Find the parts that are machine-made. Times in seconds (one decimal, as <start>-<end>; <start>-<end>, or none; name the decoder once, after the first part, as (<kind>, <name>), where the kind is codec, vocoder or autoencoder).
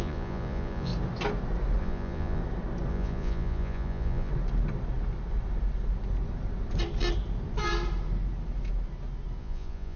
0.0-0.9 (vocoder, Vocos); 1.8-2.4; 2.9-4.3; 9.4-10.0